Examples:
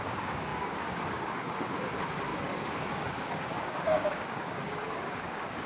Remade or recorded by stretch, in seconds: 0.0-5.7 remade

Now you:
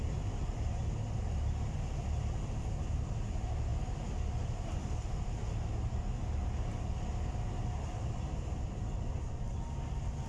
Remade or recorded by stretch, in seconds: 0.0-10.3 recorded

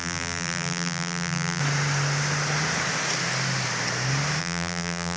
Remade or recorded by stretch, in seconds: 0.0-1.6 remade; 1.6-4.4 recorded; 4.4-5.2 remade

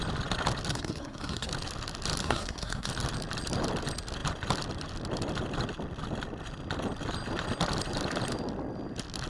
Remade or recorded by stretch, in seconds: 0.0-0.7 recorded; 0.7-1.5 remade; 1.5-2.2 recorded; 2.2-2.9 remade; 2.9-9.3 recorded

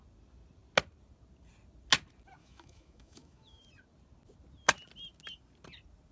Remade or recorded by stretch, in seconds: 0.0-2.4 recorded; 2.4-3.6 remade; 3.6-6.1 recorded

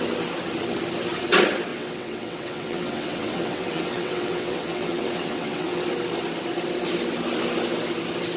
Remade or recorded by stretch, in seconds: 0.0-1.7 recorded; 1.7-5.8 remade; 5.8-8.4 recorded

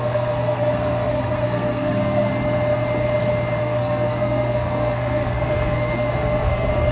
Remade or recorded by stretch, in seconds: 0.0-2.3 remade; 2.3-3.6 recorded; 3.6-6.9 remade

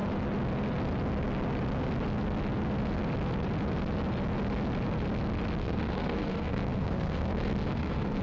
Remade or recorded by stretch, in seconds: 0.0-5.6 recorded; 5.6-8.2 remade